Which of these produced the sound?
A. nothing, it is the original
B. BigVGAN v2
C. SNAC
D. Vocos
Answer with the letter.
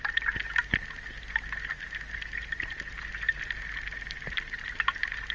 A